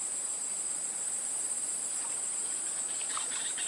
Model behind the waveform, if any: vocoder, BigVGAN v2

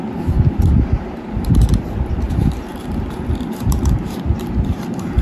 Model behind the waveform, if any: vocoder, BigVGAN v2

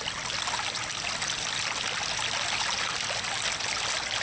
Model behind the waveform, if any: none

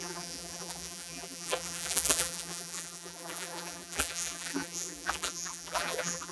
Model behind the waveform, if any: vocoder, BigVGAN v2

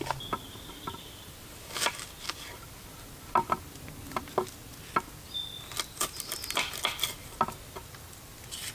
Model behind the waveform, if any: none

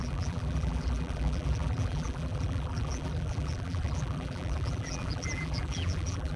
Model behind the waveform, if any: vocoder, BigVGAN v2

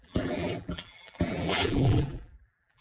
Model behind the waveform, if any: vocoder, BigVGAN v2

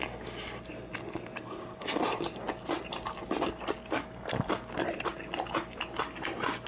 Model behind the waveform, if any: none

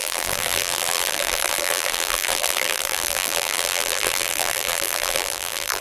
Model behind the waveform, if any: vocoder, BigVGAN v2